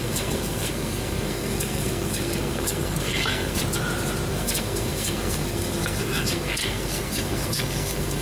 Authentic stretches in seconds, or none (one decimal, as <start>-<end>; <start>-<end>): 3.6-4.3